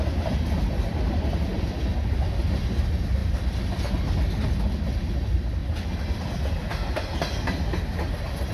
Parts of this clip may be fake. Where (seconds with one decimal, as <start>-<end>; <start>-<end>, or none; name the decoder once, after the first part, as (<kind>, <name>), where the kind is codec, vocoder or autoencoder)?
3.2-3.9 (vocoder, BigVGAN v2)